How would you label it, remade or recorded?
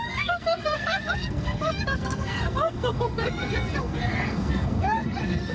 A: remade